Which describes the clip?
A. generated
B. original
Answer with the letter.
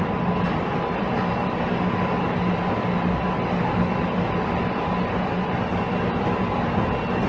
B